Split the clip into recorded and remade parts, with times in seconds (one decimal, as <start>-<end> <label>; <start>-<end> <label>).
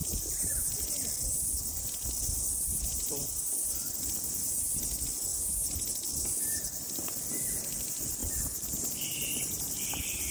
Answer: 0.0-5.3 remade; 5.3-7.3 recorded; 7.3-10.3 remade